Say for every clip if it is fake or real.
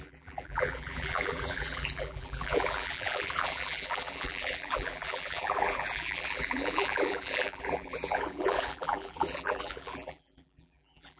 fake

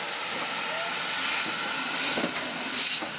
real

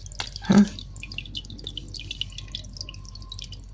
real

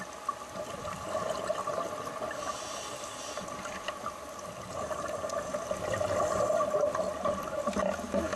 real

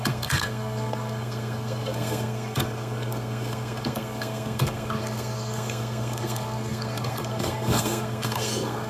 fake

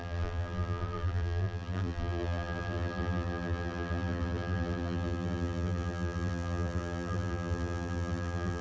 fake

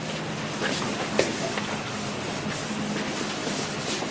real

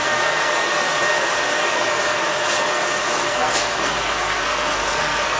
fake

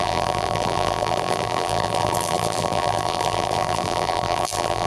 fake